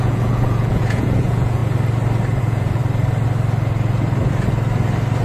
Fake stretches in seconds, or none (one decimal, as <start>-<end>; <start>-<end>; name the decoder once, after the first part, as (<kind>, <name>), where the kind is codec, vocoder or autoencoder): 0.0-1.6 (vocoder, Vocos); 2.4-2.8